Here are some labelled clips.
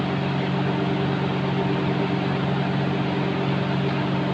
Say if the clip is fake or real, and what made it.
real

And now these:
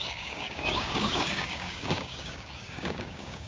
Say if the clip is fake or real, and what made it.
fake, codec, DAC